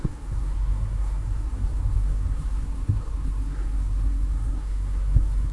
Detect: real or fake fake